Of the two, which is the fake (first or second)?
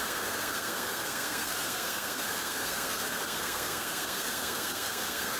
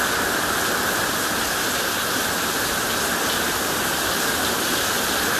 first